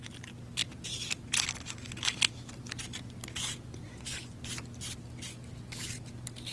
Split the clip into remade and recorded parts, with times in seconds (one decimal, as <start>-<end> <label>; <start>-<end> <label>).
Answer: 0.0-3.8 recorded; 3.8-4.4 remade; 4.4-6.5 recorded